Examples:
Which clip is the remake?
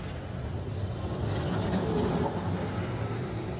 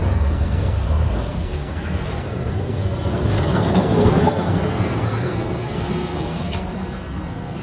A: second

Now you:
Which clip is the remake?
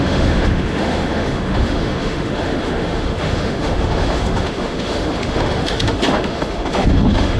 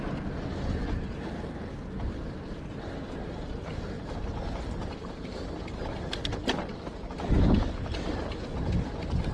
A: first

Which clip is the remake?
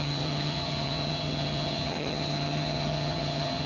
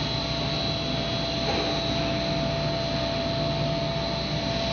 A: first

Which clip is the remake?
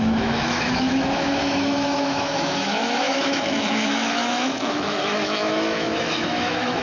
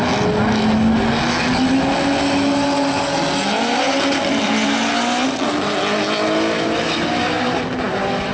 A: first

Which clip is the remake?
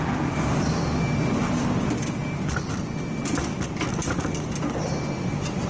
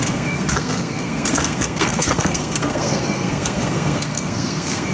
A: second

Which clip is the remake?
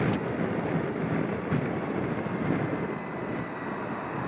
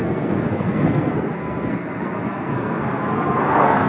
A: second